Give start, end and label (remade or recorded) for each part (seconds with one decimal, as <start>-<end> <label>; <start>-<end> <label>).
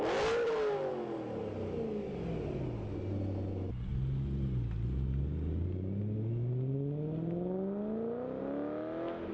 0.0-9.3 recorded